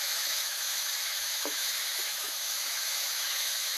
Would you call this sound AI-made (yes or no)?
yes